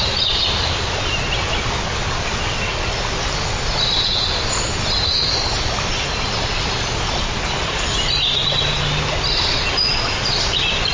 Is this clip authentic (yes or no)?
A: yes